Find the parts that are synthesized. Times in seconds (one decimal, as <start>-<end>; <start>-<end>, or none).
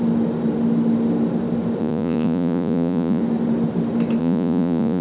1.8-3.2; 4.2-5.0